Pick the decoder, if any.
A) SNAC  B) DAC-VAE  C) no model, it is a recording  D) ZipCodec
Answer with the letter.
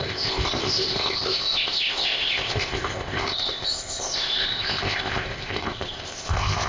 D